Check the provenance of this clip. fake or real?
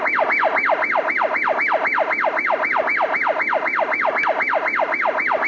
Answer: real